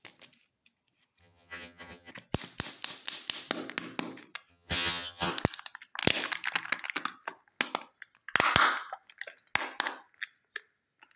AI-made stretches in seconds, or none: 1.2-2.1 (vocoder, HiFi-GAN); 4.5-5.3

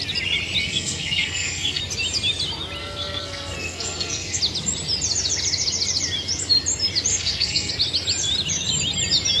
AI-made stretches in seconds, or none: 0.6-1.8 (codec, SNAC); 2.8-4.4; 7.1-7.7

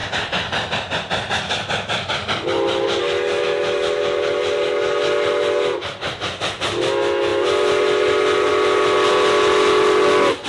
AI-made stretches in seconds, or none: none

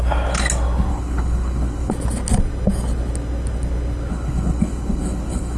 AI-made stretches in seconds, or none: 0.9-1.9 (codec, HILCodec); 4.1-5.6

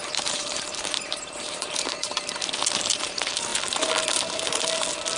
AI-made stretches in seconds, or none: 0.0-2.1 (vocoder, BigVGAN v2)

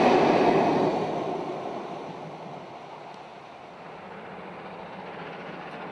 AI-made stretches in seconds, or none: none

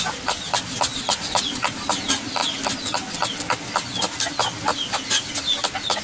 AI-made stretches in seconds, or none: 0.9-1.4 (vocoder, BigVGAN v2)

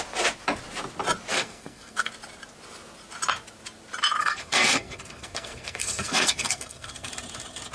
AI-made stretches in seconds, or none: 1.3-2.1 (codec, SNAC); 4.2-7.1